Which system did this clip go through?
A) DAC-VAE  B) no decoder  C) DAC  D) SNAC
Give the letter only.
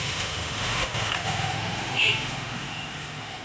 A